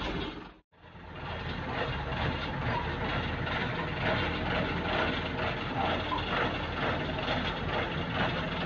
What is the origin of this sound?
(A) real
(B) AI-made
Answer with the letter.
A